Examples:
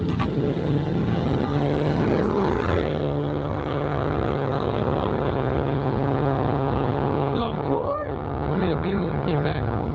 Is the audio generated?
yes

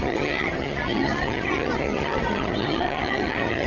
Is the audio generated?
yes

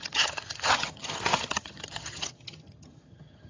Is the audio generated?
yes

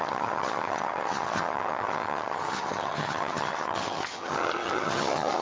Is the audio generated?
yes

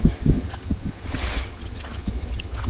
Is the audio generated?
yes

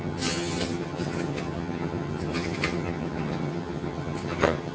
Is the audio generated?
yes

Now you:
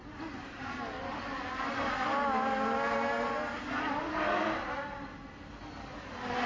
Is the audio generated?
no